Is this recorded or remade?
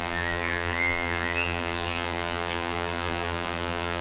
remade